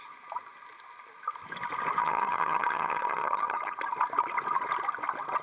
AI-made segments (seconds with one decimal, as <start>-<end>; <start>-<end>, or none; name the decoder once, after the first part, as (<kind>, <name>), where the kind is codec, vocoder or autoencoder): 2.0-3.8 (vocoder, HiFi-GAN)